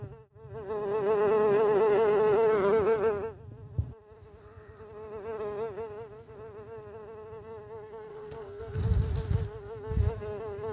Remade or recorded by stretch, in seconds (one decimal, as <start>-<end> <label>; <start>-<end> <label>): 0.0-8.1 recorded; 8.1-8.8 remade; 8.8-10.7 recorded